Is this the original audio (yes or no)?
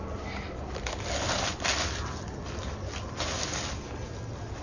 yes